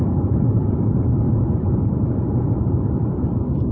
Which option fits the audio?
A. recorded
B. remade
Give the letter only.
B